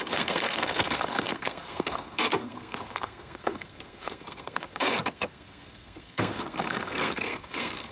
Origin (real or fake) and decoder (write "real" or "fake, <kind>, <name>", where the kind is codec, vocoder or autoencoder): fake, codec, SNAC